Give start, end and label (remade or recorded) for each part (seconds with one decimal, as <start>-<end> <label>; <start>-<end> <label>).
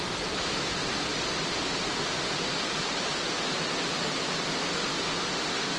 0.0-5.8 recorded